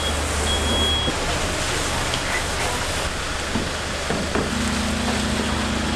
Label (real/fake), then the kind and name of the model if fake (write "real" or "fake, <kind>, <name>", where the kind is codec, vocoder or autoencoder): real